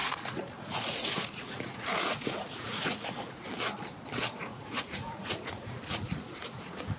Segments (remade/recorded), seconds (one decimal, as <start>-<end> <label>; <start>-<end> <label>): 0.0-3.5 remade; 3.5-4.4 recorded; 4.4-7.0 remade